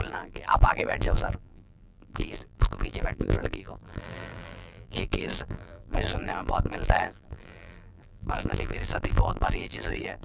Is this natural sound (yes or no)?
no